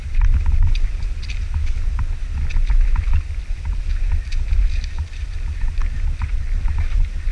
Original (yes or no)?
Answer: yes